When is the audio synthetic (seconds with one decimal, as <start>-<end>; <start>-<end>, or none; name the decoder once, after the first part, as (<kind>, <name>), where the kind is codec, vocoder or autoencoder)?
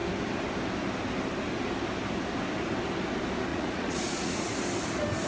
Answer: 3.5-4.5 (vocoder, Vocos)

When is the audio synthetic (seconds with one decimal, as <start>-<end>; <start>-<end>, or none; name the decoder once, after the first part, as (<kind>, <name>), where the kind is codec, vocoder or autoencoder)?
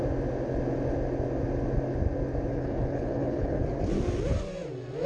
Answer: 2.5-3.6 (codec, HILCodec)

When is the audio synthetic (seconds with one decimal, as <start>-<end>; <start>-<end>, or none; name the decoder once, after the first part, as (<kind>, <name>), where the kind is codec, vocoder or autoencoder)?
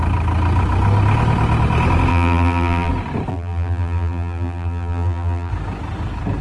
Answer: 2.1-2.9 (vocoder, BigVGAN v2); 3.3-5.5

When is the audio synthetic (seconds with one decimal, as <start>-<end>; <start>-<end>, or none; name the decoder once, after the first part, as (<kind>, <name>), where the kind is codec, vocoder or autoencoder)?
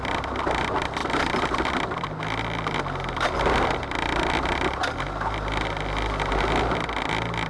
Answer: none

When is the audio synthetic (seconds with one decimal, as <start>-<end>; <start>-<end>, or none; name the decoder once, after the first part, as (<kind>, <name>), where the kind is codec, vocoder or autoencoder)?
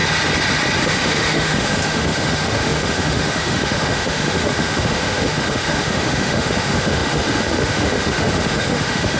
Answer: 0.8-9.2 (autoencoder, DAC-VAE)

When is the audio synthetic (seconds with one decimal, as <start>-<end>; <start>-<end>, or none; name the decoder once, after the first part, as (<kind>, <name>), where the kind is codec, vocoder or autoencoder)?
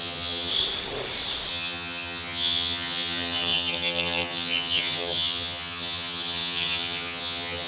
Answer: 0.0-0.5 (vocoder, HiFi-GAN); 1.5-7.7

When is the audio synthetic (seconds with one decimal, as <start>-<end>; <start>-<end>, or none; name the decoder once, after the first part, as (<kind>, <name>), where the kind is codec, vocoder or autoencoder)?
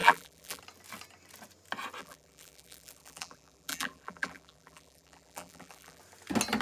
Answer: 0.0-0.6 (vocoder, BigVGAN v2); 2.0-6.0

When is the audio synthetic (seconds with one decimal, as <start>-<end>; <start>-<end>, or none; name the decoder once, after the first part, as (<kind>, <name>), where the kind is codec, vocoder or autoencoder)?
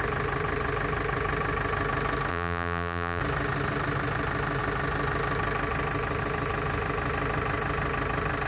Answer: 2.3-3.2 (vocoder, BigVGAN v2)